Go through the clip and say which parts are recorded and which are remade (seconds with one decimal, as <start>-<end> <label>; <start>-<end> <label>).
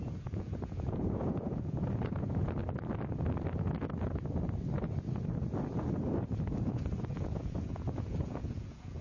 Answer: 0.0-2.6 remade; 2.6-6.4 recorded; 6.4-9.0 remade